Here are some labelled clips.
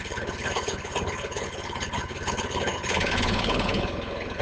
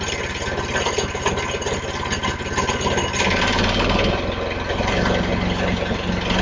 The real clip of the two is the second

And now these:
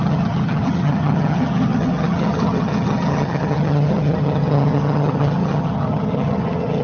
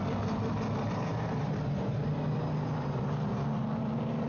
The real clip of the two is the second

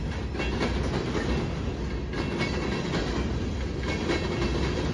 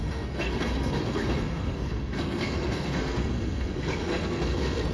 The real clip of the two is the first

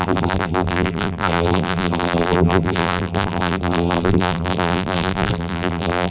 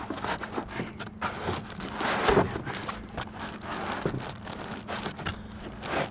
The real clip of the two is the second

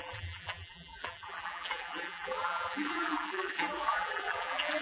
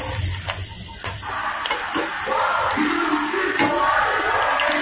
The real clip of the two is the second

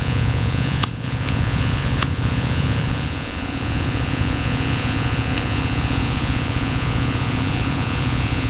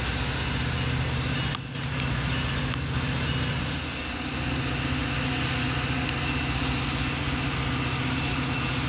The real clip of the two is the second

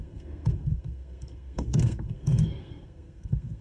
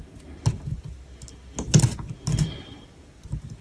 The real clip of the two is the second